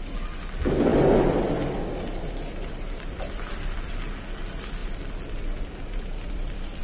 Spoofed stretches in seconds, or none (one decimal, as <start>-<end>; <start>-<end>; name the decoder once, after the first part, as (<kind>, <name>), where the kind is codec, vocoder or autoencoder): 0.9-4.1 (vocoder, BigVGAN v2); 4.8-5.6; 6.1-6.8

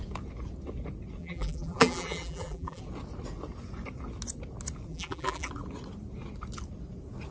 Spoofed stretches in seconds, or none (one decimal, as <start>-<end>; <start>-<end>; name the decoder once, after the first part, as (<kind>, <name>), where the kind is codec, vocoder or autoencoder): 1.2-2.8 (vocoder, BigVGAN v2); 4.9-5.5

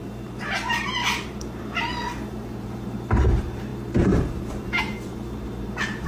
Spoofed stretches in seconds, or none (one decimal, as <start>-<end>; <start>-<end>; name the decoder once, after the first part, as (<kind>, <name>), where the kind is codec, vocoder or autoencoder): 0.0-6.1 (vocoder, BigVGAN v2)

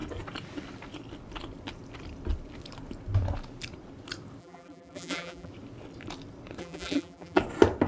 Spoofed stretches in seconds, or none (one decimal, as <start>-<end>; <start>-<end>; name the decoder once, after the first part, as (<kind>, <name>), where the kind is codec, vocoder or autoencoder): 4.4-5.5 (vocoder, BigVGAN v2); 6.6-7.4